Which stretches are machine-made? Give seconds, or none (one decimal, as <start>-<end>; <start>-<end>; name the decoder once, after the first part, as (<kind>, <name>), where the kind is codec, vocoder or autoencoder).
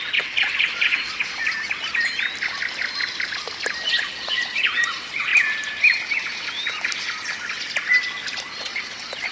0.0-1.4 (vocoder, Vocos); 3.9-5.3; 8.6-9.3